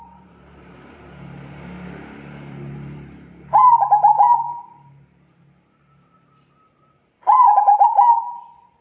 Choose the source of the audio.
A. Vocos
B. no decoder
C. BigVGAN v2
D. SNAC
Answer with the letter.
C